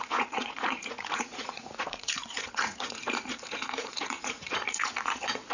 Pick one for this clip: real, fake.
fake